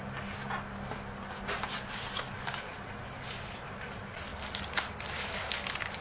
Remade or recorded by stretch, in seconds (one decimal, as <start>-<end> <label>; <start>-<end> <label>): 0.0-6.0 recorded